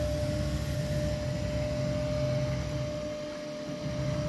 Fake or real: real